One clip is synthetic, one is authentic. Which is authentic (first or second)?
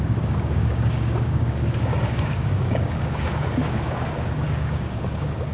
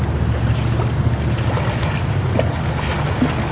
second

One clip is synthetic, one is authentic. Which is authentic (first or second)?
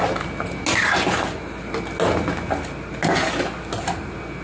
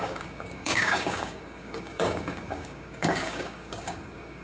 first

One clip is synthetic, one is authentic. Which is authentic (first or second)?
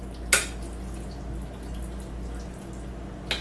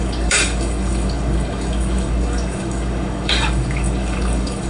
first